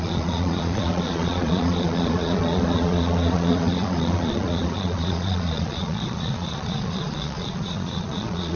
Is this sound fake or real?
fake